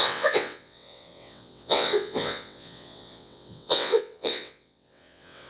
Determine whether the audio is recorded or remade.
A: remade